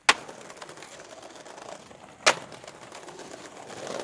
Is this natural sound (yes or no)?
yes